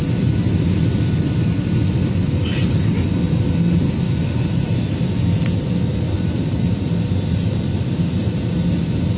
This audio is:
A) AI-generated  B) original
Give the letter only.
B